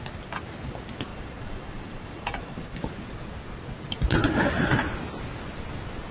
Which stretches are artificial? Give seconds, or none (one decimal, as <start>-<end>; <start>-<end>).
1.1-2.8